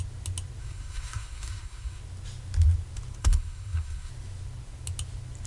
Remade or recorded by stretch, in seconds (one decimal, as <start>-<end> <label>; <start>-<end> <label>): 0.0-0.6 recorded; 0.6-2.0 remade; 2.0-3.2 recorded; 3.2-4.1 remade; 4.1-5.5 recorded